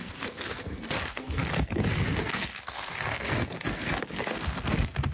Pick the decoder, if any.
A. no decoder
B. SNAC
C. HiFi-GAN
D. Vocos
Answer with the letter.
B